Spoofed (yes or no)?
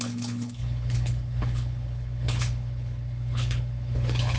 yes